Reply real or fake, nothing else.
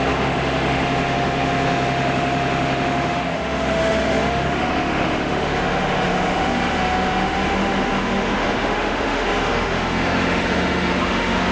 fake